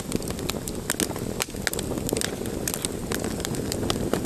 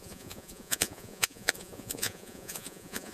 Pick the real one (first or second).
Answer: first